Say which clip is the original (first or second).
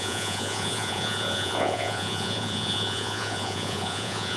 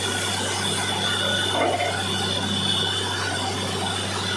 second